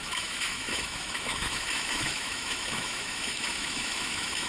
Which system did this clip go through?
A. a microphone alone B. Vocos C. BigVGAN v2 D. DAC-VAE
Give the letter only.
D